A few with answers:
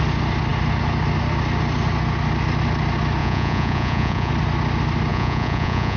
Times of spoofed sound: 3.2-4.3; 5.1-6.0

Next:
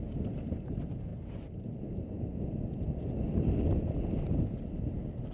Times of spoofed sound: none